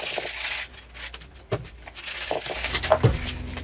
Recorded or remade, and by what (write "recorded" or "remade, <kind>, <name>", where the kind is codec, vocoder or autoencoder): recorded